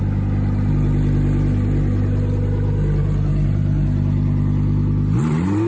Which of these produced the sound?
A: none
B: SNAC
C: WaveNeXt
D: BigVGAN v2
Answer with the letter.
A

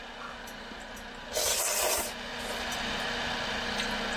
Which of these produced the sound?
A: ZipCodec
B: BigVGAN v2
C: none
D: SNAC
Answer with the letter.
C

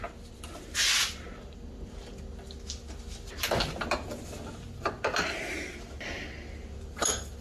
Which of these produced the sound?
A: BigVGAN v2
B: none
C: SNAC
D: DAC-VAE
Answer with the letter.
B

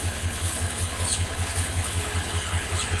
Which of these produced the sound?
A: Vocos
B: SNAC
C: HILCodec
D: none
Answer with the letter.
C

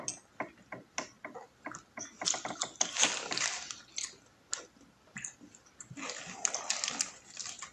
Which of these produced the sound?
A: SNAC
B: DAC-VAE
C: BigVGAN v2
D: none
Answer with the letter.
D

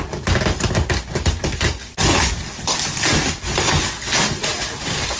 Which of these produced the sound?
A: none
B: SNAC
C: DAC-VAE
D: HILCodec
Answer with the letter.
A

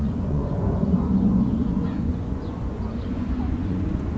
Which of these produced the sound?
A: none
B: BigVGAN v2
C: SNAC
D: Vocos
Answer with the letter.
D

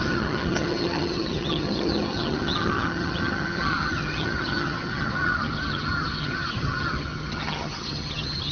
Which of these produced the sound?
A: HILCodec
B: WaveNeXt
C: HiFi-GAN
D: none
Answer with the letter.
C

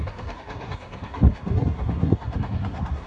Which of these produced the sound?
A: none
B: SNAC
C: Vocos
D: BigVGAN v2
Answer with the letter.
B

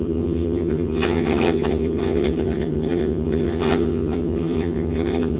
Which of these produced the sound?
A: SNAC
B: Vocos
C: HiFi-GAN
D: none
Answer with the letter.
C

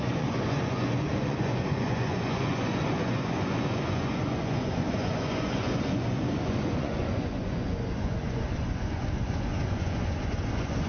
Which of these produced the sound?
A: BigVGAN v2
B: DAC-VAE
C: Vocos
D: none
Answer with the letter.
C